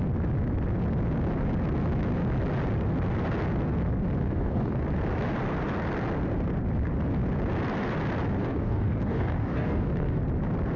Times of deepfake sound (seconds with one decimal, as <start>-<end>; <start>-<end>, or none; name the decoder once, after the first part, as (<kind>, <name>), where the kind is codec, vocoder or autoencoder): 4.2-4.8 (codec, DAC); 8.4-10.2